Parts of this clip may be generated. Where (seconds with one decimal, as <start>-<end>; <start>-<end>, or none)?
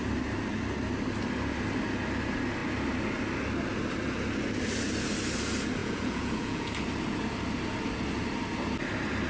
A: 5.8-6.7